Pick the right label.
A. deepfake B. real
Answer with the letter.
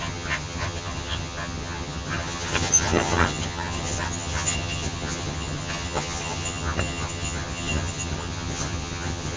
A